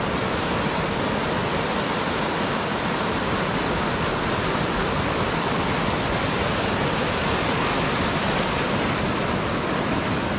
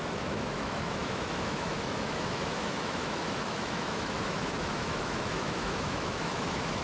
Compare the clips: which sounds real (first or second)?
first